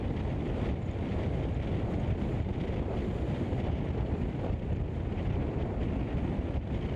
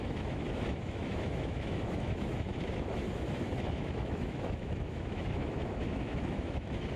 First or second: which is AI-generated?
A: second